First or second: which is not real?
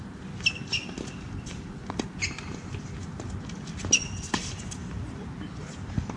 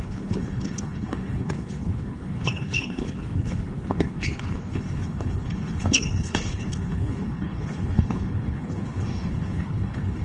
second